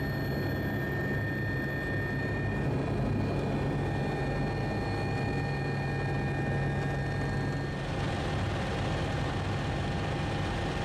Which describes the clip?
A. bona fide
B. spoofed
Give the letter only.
A